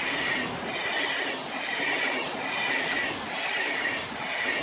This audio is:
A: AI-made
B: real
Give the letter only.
B